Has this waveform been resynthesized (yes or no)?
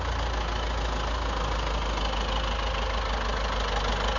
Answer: no